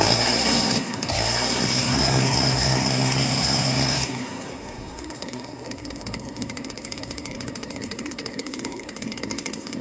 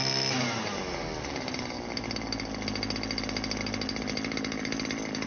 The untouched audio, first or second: second